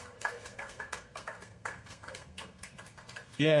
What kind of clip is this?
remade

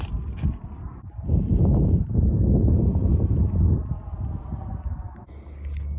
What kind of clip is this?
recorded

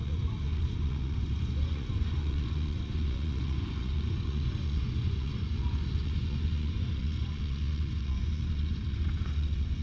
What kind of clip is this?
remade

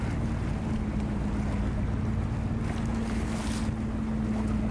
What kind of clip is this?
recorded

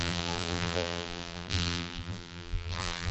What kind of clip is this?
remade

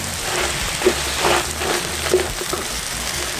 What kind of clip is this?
remade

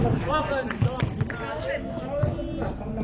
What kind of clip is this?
recorded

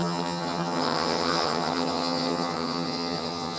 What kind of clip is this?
remade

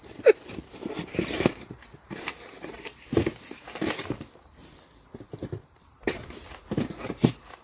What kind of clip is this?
remade